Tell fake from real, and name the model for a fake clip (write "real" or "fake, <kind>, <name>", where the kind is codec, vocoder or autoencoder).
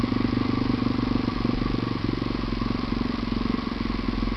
real